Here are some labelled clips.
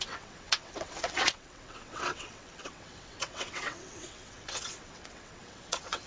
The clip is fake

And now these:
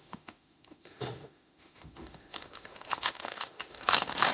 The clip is fake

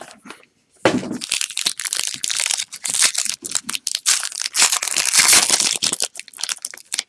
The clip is real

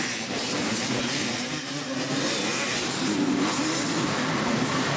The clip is fake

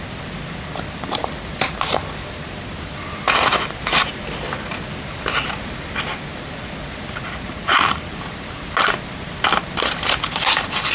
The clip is real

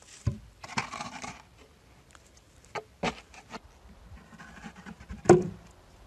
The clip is real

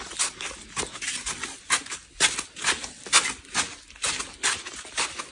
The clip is real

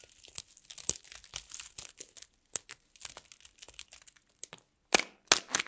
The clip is real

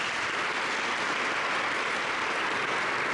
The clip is real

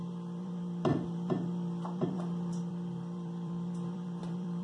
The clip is fake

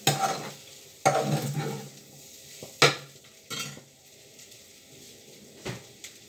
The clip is real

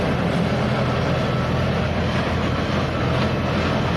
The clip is real